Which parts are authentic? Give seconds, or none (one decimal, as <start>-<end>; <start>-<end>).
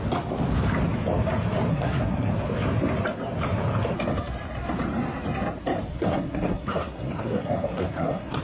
0.0-1.7; 2.3-5.9